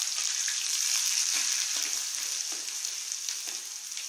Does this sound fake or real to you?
real